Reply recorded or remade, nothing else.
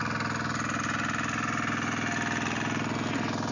recorded